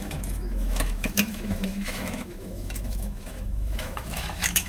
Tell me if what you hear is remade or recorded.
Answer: remade